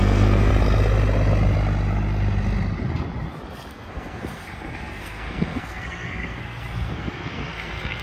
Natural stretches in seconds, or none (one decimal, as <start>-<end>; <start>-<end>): 0.5-3.7